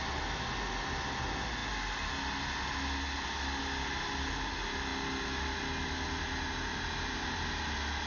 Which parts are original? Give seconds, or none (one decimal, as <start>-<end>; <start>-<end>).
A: 0.0-8.1